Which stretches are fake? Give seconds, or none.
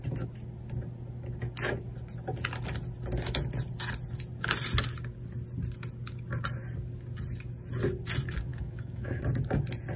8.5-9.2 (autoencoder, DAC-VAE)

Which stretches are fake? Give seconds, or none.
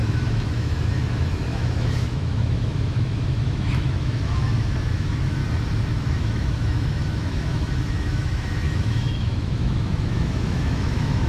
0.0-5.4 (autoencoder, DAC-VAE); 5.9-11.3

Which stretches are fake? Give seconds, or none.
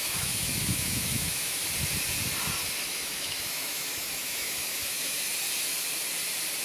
0.0-1.6 (autoencoder, DAC-VAE); 2.9-5.3